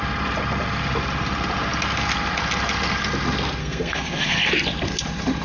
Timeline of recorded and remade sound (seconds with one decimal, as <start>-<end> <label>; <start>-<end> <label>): 0.0-3.6 recorded; 3.6-4.5 remade; 4.5-5.4 recorded